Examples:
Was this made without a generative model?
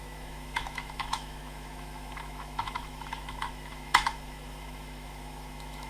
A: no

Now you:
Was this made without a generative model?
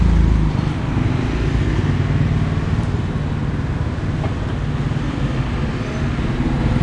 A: yes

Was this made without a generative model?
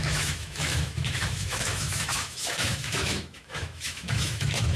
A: no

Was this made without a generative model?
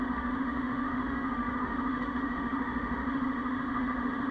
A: no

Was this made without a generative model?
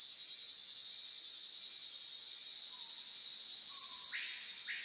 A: yes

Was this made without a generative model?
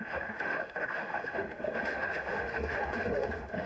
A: no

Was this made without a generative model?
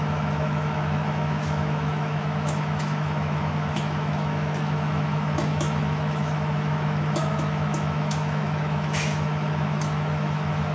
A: no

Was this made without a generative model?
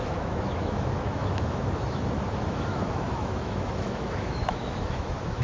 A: no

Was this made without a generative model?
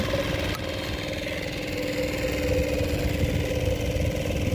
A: yes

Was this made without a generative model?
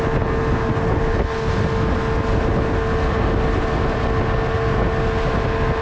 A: yes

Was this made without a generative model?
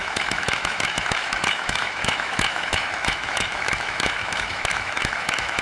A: no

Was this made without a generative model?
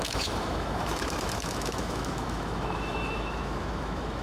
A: no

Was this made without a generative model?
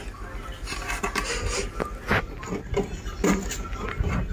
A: yes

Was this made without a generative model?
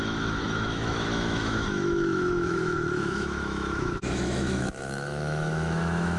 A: no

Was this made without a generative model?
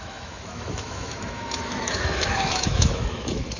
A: no